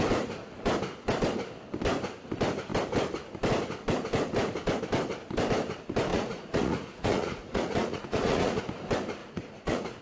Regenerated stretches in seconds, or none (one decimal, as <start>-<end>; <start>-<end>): 6.1-8.6; 9.2-10.0